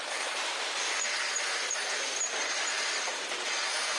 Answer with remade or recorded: remade